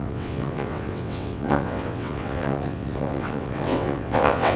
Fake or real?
fake